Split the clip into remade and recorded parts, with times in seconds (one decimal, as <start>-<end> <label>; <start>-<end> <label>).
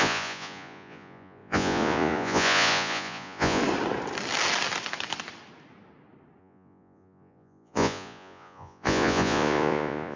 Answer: 0.0-3.6 remade; 3.6-6.4 recorded; 6.4-10.2 remade